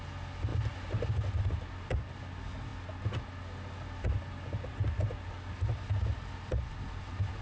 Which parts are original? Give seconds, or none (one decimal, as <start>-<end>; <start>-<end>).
0.0-7.4